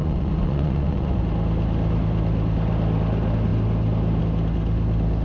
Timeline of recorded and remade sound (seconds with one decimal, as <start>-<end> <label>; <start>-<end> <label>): 0.0-1.2 remade; 1.2-5.2 recorded